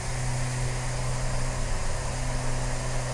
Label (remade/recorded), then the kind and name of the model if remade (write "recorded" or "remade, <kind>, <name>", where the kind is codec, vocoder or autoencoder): recorded